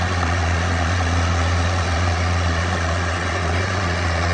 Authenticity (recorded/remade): remade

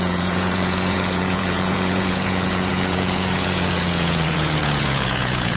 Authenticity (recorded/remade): remade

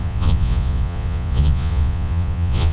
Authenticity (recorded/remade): remade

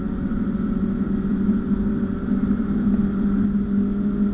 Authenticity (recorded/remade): recorded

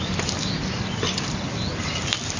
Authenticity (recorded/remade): recorded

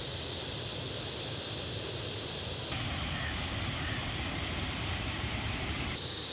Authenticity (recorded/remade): recorded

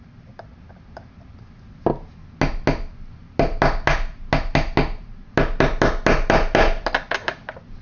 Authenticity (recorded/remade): recorded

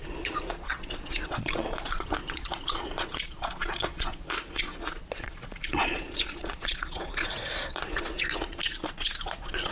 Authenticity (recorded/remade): remade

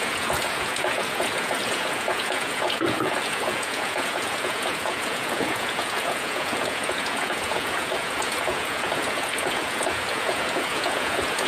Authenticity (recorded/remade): remade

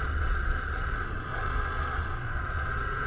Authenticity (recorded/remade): remade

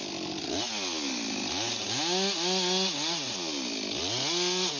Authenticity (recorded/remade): recorded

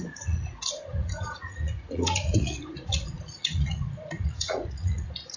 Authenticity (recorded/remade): remade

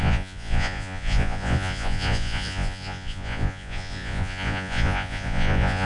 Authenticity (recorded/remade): remade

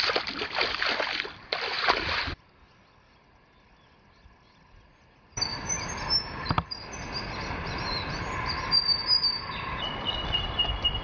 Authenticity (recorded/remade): recorded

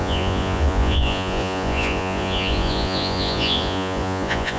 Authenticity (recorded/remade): remade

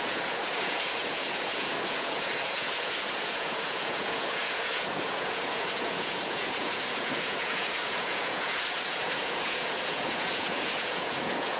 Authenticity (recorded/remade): remade